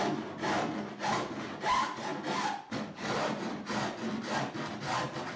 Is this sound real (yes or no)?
yes